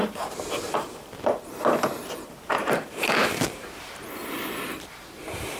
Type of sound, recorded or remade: remade